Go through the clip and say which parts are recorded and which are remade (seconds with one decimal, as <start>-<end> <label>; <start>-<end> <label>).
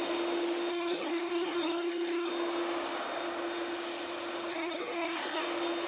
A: 0.0-0.7 recorded; 0.7-2.3 remade; 2.3-4.5 recorded; 4.5-5.4 remade; 5.4-5.9 recorded